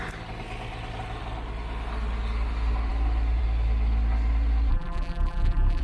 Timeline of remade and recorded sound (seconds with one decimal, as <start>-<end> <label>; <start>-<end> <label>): 0.0-4.7 recorded; 4.7-5.8 remade